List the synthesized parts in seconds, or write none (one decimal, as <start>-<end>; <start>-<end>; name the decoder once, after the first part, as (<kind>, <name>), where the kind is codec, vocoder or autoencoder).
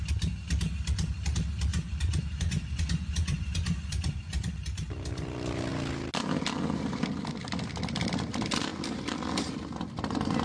1.7-4.5 (vocoder, Vocos)